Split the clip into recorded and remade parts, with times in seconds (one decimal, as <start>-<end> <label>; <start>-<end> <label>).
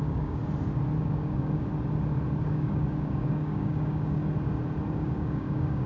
0.0-0.4 remade; 0.4-1.0 recorded; 1.0-1.7 remade; 1.7-2.4 recorded; 2.4-4.2 remade; 4.2-4.9 recorded; 4.9-5.9 remade